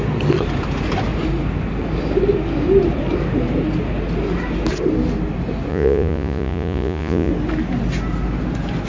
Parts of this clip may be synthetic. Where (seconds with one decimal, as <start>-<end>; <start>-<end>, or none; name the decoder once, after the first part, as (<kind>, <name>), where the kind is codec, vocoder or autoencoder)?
5.7-7.3 (vocoder, Vocos)